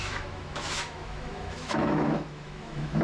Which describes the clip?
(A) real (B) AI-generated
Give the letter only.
B